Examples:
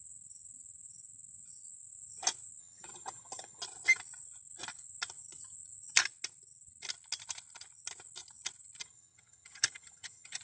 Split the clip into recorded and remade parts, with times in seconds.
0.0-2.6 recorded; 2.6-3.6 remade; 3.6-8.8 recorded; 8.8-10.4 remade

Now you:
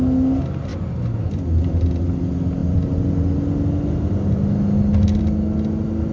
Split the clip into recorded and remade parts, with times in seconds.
0.0-6.1 recorded